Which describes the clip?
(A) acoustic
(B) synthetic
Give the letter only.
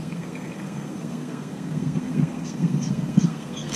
B